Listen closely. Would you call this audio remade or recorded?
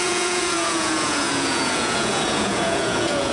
remade